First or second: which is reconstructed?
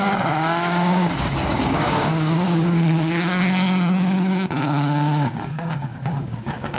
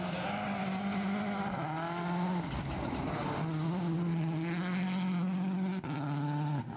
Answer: first